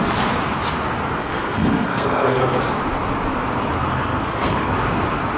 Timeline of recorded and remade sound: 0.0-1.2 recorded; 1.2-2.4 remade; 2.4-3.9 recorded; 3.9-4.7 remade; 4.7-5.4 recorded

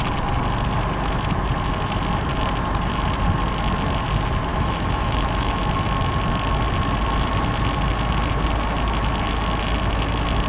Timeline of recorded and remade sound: 0.0-4.5 recorded; 4.5-5.6 remade; 5.6-10.5 recorded

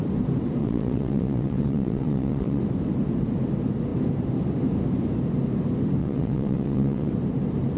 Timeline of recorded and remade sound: 0.0-0.6 recorded; 0.6-2.6 remade; 2.6-6.0 recorded; 6.0-7.1 remade; 7.1-7.8 recorded